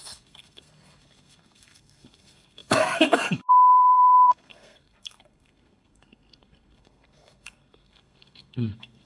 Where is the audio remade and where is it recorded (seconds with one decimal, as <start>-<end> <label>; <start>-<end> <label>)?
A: 0.0-9.1 remade